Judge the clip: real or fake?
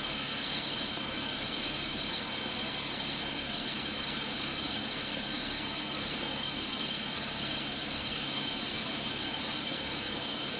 fake